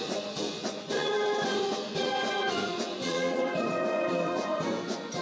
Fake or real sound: fake